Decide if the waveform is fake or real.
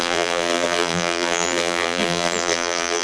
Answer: fake